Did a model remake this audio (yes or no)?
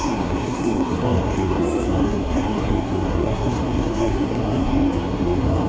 yes